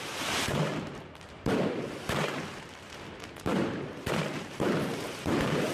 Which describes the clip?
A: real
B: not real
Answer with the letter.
B